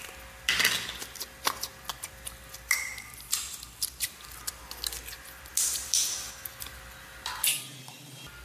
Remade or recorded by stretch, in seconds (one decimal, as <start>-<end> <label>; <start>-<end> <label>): 0.0-8.4 recorded